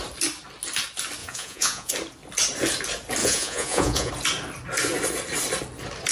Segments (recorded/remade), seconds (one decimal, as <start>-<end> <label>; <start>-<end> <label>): 0.0-1.2 recorded; 1.2-1.9 remade; 1.9-3.2 recorded; 3.2-4.1 remade; 4.1-6.1 recorded